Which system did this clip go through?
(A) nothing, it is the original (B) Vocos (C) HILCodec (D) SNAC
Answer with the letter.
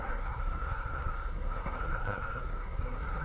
D